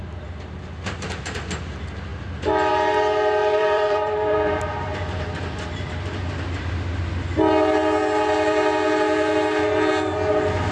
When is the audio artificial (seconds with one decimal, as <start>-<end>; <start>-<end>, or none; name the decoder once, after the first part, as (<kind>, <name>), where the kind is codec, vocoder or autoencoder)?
3.4-4.6 (vocoder, BigVGAN v2)